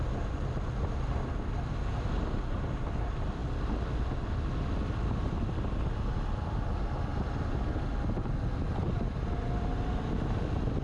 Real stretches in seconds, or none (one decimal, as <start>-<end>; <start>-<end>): 0.0-10.8